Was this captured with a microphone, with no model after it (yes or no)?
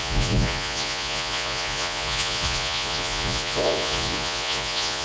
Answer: no